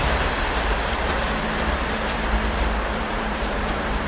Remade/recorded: remade